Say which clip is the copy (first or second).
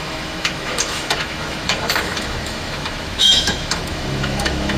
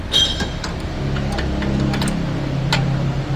first